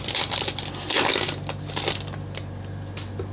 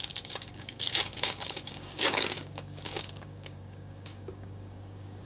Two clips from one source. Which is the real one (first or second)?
first